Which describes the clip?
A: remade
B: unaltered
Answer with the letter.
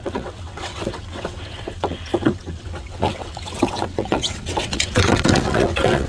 A